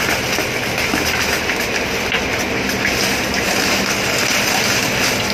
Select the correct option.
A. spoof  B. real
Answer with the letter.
B